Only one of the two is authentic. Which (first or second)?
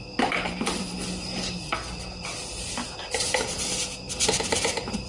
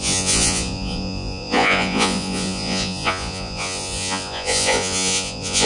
first